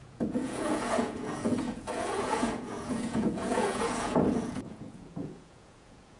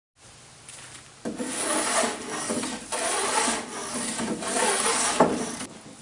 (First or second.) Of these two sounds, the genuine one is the second